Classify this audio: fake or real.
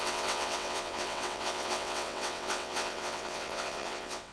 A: fake